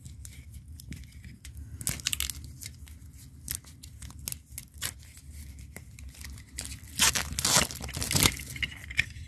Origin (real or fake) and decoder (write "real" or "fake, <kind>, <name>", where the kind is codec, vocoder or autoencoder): real